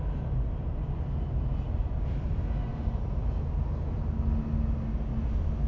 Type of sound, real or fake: real